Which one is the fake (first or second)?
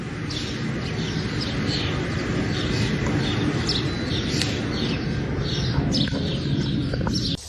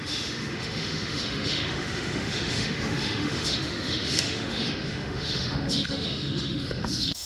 second